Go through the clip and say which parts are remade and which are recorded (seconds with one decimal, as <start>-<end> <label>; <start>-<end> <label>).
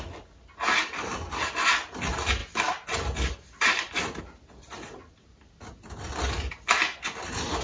0.0-7.6 recorded